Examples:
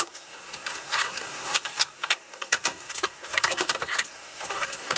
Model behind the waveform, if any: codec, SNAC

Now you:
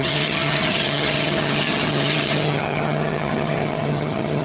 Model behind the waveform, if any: vocoder, HiFi-GAN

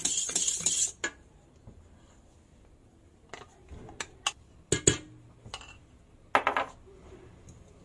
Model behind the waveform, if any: none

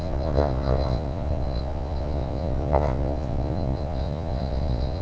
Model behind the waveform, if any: vocoder, Vocos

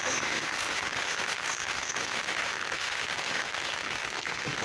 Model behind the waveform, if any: autoencoder, DAC-VAE